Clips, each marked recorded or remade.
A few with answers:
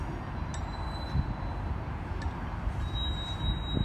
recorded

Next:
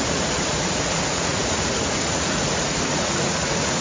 remade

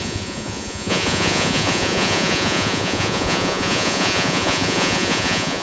remade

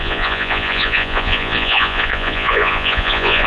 remade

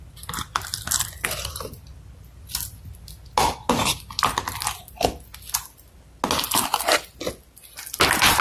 recorded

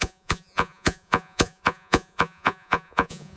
remade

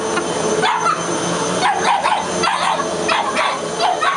recorded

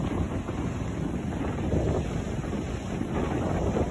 recorded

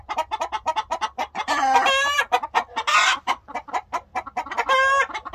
recorded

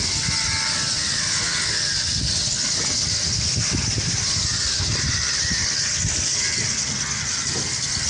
recorded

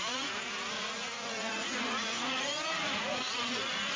remade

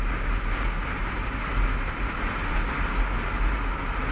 recorded